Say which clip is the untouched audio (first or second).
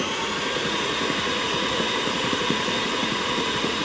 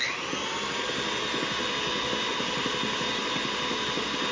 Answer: second